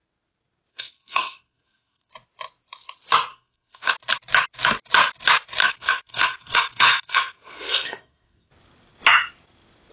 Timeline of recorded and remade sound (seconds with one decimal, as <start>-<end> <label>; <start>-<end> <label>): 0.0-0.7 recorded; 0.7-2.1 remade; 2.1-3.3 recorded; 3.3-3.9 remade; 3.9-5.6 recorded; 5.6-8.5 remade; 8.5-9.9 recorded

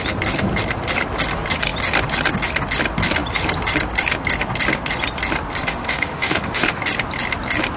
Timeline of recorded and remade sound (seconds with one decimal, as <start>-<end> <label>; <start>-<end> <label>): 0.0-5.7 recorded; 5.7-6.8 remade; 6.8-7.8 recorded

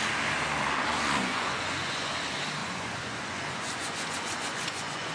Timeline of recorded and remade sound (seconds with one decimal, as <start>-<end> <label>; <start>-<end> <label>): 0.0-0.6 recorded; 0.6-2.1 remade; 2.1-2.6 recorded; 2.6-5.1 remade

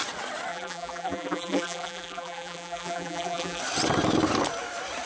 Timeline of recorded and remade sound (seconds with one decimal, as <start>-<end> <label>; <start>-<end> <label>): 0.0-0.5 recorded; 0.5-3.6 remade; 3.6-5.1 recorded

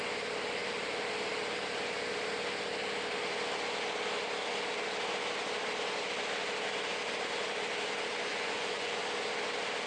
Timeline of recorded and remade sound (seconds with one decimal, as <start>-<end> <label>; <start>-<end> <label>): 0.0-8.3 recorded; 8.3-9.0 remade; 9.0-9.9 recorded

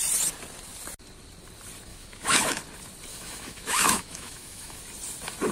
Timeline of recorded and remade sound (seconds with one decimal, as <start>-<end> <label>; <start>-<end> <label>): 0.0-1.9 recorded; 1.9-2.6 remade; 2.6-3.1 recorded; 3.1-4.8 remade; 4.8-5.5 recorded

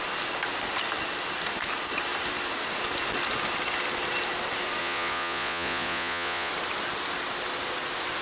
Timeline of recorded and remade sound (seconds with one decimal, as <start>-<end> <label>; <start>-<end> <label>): 0.0-4.8 recorded; 4.8-6.5 remade; 6.5-8.2 recorded